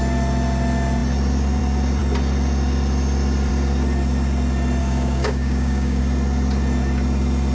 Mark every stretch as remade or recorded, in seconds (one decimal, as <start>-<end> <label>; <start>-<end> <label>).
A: 0.0-4.8 recorded; 4.8-6.0 remade; 6.0-7.5 recorded